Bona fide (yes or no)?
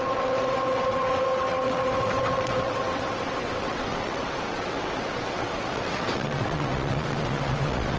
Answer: no